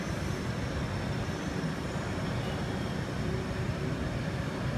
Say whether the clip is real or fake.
real